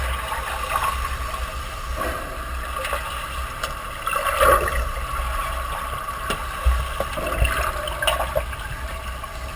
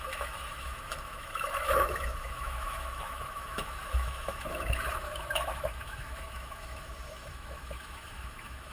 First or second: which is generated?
second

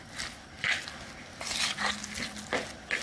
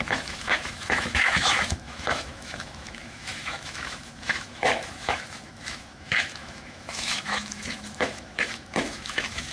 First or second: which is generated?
second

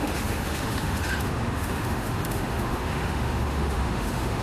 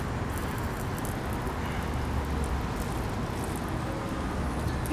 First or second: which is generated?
first